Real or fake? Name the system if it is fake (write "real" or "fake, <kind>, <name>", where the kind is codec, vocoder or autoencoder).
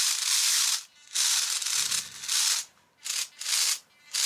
real